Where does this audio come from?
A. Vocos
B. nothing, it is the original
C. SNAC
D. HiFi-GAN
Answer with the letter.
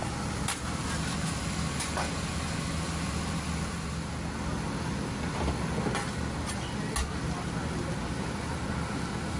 B